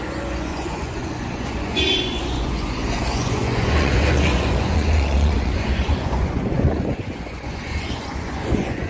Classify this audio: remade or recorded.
remade